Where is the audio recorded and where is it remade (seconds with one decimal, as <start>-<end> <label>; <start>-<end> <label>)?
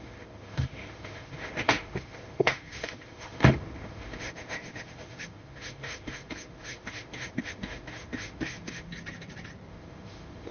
0.0-8.9 remade; 8.9-9.7 recorded; 9.7-10.5 remade